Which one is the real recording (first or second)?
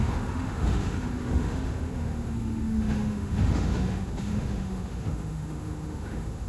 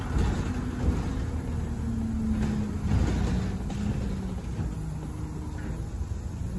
second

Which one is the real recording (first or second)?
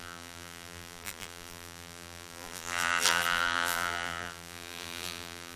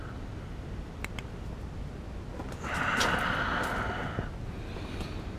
second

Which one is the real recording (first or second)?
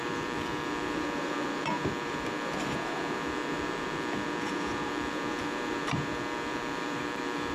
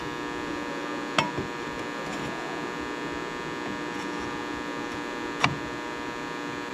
second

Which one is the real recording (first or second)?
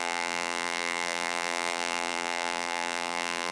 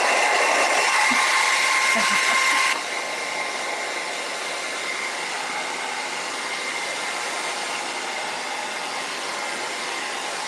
second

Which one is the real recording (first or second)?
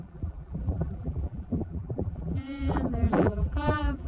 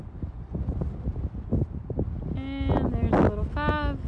second